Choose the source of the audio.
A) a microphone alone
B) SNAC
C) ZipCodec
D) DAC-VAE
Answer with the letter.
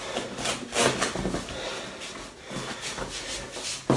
A